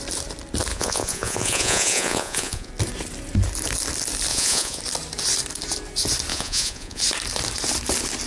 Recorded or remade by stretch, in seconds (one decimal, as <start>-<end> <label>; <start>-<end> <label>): 0.0-0.7 recorded; 0.7-2.7 remade; 2.7-4.3 recorded; 4.3-4.8 remade; 4.8-6.3 recorded; 6.3-7.0 remade; 7.0-8.3 recorded